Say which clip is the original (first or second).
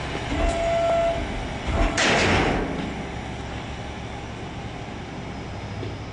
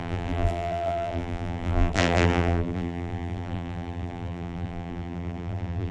first